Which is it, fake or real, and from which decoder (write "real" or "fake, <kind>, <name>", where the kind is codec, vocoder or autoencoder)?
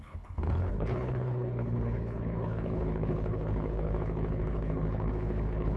fake, codec, HILCodec